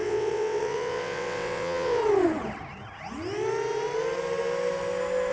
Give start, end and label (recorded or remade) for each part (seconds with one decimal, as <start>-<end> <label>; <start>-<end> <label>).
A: 0.0-2.0 remade; 2.0-5.3 recorded